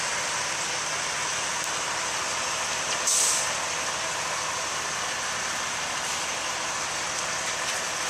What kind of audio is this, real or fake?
real